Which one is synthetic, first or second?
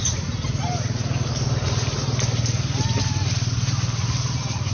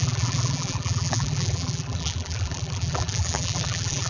second